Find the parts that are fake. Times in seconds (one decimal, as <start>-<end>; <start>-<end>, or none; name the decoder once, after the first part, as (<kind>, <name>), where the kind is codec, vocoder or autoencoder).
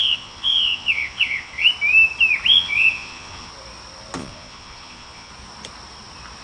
0.0-1.6 (vocoder, Vocos); 2.5-3.5; 4.2-5.3